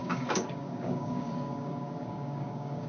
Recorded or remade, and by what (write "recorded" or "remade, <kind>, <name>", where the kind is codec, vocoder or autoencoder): remade, codec, DAC